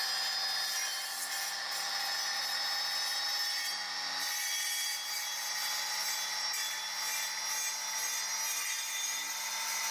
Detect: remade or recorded recorded